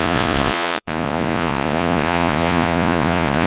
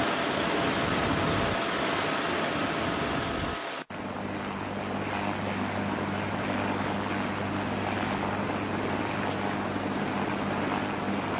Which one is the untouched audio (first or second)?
second